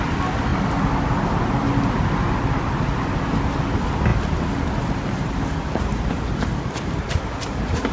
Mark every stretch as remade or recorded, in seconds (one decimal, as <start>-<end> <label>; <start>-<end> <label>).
0.0-7.9 recorded